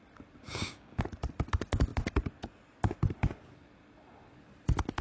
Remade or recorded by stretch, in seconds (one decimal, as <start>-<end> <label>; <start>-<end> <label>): 0.0-0.4 recorded; 0.4-1.0 remade; 1.0-5.0 recorded